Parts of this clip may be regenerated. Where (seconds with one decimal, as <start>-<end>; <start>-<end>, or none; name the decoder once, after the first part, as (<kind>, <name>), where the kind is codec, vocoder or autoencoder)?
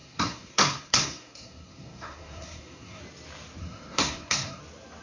0.0-3.0 (codec, SNAC); 3.6-4.6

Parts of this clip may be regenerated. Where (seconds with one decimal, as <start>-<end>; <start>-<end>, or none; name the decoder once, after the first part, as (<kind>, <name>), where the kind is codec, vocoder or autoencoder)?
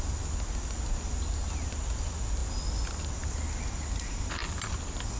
none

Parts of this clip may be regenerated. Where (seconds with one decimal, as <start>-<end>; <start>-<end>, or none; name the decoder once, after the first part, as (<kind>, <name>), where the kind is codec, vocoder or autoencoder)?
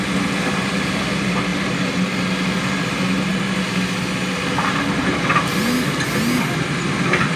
none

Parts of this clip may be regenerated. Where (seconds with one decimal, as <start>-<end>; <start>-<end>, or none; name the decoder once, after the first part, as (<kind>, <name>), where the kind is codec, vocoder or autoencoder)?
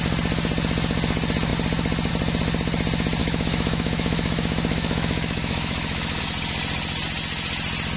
3.2-6.2 (autoencoder, DAC-VAE)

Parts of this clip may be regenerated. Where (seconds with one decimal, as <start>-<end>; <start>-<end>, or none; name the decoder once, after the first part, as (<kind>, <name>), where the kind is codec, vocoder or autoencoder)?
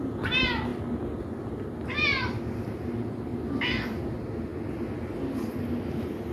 none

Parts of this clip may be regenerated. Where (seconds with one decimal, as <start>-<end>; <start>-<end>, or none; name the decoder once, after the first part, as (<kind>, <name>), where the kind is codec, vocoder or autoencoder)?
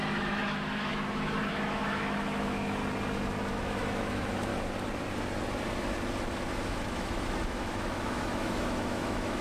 0.0-2.8 (autoencoder, DAC-VAE); 3.5-4.5; 6.7-9.4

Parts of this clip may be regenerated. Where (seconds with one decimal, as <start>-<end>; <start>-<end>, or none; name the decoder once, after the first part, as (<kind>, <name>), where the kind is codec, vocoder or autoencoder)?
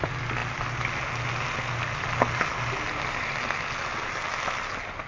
none